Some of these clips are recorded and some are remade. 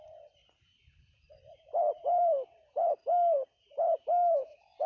remade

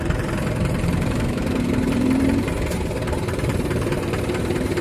remade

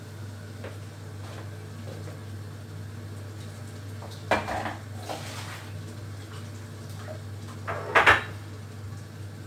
recorded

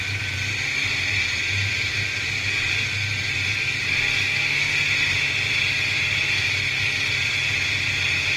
recorded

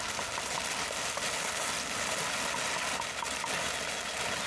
recorded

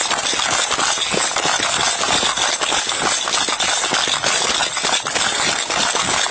recorded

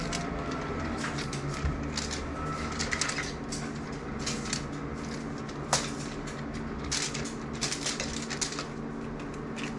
recorded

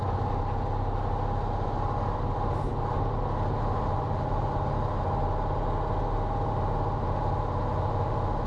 recorded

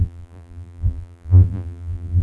remade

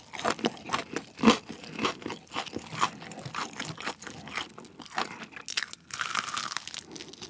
recorded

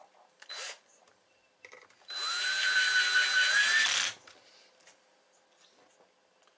remade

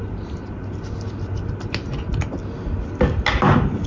recorded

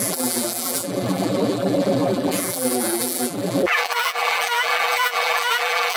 remade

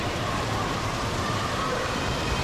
remade